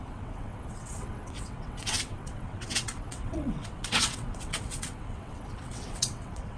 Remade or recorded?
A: remade